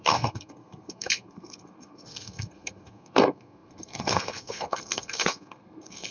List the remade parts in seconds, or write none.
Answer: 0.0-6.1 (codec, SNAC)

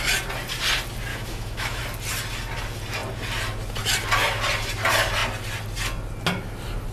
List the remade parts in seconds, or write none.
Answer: 1.1-1.8 (autoencoder, DAC-VAE)